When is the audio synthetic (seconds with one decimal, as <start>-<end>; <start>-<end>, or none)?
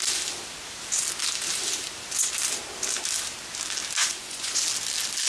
4.0-4.6